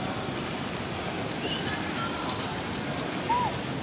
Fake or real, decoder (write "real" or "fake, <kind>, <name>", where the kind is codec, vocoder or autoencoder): real